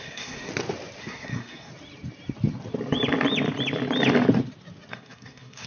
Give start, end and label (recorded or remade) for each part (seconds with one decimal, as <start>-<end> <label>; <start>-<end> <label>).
0.0-0.5 remade; 0.5-1.0 recorded; 1.0-1.7 remade; 1.7-4.9 recorded; 4.9-5.7 remade